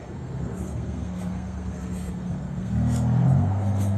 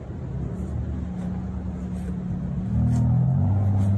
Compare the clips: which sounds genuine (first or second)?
second